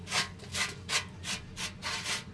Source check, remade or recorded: recorded